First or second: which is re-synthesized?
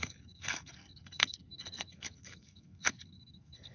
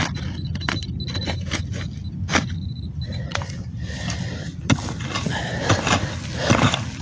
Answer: first